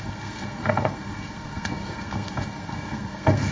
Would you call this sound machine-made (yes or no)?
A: yes